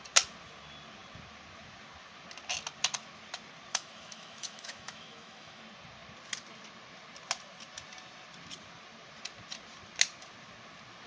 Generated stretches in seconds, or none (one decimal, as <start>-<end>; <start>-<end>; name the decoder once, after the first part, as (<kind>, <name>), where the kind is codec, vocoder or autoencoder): 3.7-5.6 (autoencoder, DAC-VAE)

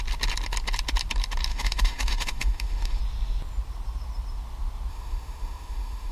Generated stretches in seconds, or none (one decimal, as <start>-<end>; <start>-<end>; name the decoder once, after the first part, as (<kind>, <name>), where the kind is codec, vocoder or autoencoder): 1.5-3.0 (autoencoder, DAC-VAE); 4.9-6.1

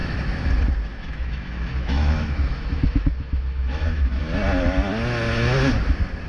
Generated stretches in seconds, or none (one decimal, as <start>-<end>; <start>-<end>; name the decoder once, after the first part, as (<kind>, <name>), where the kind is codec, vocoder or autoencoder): 0.0-0.5 (autoencoder, DAC-VAE); 0.9-4.2

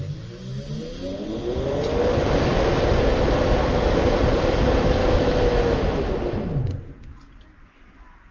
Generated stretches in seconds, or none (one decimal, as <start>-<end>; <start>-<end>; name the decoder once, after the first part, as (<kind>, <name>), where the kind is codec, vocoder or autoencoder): 3.6-4.1 (autoencoder, DAC-VAE); 5.0-5.8

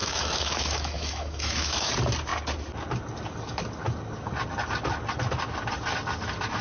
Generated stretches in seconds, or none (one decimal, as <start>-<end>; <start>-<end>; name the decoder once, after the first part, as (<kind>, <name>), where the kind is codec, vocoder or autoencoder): 0.0-1.9 (autoencoder, DAC-VAE)

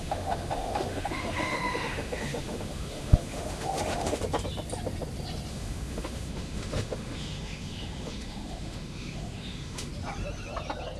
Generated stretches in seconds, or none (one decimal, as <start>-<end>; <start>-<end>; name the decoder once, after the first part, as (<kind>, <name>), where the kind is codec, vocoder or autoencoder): 0.0-4.2 (autoencoder, DAC-VAE); 5.5-9.9

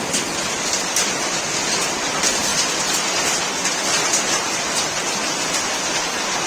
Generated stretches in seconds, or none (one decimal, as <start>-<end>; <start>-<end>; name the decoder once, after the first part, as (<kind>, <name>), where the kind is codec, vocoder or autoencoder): none